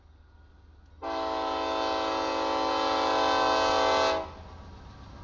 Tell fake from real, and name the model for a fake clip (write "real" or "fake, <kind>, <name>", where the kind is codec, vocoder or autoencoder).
real